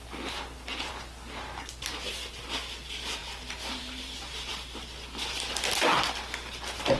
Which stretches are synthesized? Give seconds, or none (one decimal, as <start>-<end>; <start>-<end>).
none